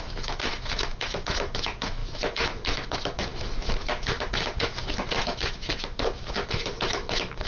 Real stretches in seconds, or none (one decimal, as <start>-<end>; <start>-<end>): none